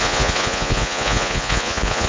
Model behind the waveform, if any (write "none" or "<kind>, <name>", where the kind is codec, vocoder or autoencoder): vocoder, Vocos